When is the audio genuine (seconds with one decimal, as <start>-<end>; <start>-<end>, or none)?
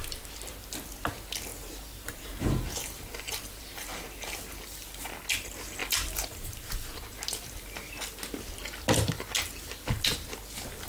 0.0-1.5; 4.3-5.8; 6.7-10.9